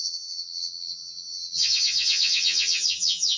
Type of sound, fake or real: fake